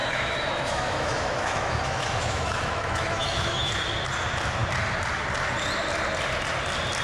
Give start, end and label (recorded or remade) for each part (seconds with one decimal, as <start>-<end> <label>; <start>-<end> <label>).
0.0-3.7 remade; 3.7-7.0 recorded